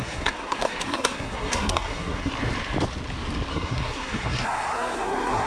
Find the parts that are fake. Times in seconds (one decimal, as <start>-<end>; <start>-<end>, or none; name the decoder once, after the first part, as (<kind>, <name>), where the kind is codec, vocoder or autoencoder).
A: 0.0-2.3 (codec, SNAC); 3.5-5.5